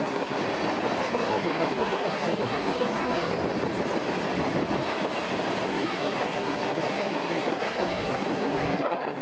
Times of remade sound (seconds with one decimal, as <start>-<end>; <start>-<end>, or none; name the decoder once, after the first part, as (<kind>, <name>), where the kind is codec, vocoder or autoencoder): 0.0-0.4 (codec, SNAC); 1.1-3.3; 5.7-9.2